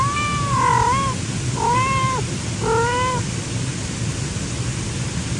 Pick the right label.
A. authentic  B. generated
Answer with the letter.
A